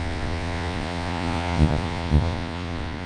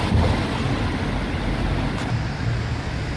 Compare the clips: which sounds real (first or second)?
second